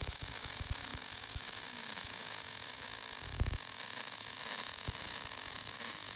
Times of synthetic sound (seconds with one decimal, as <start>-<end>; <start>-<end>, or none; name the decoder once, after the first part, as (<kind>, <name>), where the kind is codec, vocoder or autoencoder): 0.0-6.2 (autoencoder, DAC-VAE)